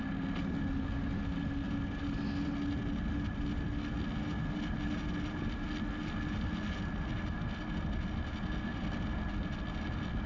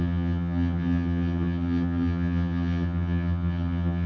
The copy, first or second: second